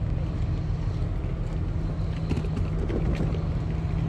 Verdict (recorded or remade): recorded